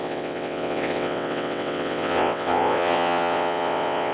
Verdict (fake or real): fake